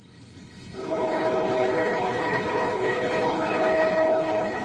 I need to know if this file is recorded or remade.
remade